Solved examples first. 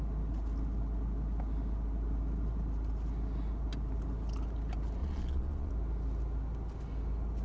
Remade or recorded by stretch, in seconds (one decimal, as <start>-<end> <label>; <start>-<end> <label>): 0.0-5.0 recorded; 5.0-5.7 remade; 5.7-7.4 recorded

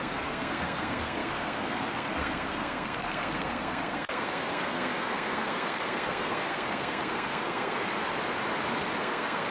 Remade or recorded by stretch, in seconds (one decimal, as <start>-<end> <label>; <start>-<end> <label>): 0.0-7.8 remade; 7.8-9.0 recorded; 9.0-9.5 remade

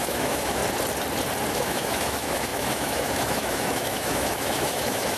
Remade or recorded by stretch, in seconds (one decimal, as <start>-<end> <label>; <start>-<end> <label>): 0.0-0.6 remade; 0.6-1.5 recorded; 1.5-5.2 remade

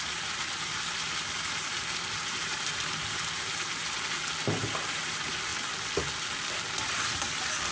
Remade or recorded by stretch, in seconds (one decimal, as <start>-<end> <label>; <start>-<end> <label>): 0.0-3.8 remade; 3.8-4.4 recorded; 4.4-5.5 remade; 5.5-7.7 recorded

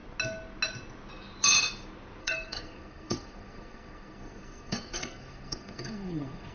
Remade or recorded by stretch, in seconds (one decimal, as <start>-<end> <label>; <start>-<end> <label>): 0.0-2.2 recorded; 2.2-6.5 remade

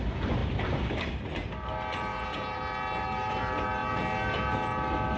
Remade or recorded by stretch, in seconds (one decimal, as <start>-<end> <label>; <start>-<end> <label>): 0.0-2.1 recorded; 2.1-2.6 remade; 2.6-5.2 recorded

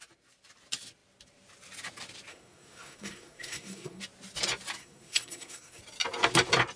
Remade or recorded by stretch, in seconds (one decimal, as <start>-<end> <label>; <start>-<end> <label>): 0.0-2.3 recorded; 2.3-4.0 remade; 4.0-4.8 recorded; 4.8-5.8 remade; 5.8-6.8 recorded

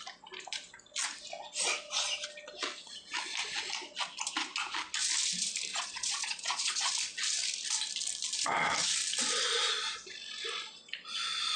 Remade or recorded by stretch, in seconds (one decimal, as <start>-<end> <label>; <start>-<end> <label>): 0.0-5.7 recorded; 5.7-6.9 remade; 6.9-11.6 recorded